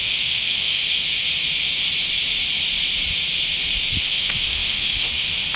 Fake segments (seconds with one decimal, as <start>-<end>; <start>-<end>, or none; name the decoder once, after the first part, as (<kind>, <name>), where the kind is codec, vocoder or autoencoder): 0.0-0.8 (autoencoder, DAC-VAE); 4.0-5.6